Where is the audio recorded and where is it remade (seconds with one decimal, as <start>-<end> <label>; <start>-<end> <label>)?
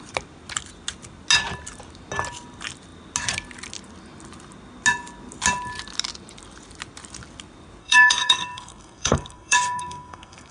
0.0-7.8 recorded; 7.8-10.5 remade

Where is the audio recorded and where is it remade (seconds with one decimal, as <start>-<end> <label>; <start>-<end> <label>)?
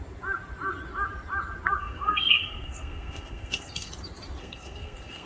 0.0-1.8 recorded; 1.8-3.9 remade; 3.9-4.4 recorded; 4.4-5.3 remade